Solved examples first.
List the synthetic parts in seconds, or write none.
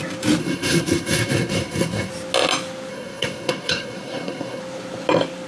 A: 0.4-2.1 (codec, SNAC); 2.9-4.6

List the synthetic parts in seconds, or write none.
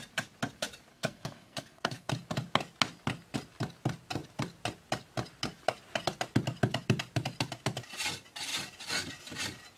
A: 0.9-2.1 (codec, SNAC)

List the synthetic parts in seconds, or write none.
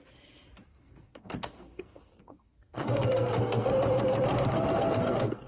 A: 0.7-3.7 (codec, SNAC); 4.3-5.5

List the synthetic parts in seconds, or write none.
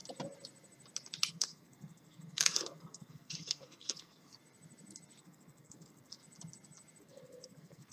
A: 1.3-4.4 (codec, SNAC); 5.2-6.2; 7.0-7.9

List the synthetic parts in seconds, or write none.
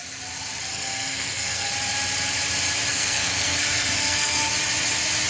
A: 0.7-1.7 (codec, SNAC); 2.9-4.5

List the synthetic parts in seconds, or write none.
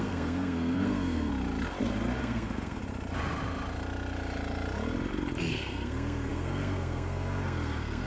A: 0.0-1.3 (codec, SNAC); 2.2-2.8; 5.5-8.1